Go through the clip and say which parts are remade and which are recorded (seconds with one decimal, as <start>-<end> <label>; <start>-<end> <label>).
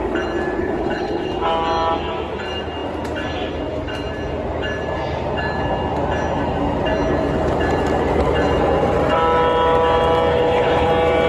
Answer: 0.0-0.6 recorded; 0.6-1.3 remade; 1.3-10.3 recorded; 10.3-10.9 remade; 10.9-11.3 recorded